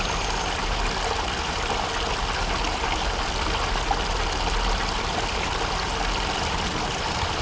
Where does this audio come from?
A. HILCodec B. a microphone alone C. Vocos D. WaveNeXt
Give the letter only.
B